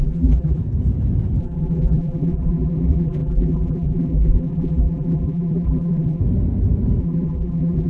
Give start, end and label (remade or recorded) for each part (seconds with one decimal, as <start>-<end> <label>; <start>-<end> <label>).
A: 0.0-0.6 remade; 0.6-1.4 recorded; 1.4-6.2 remade; 6.2-7.0 recorded; 7.0-7.9 remade